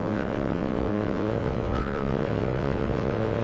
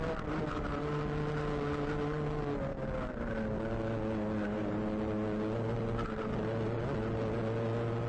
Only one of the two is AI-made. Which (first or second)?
first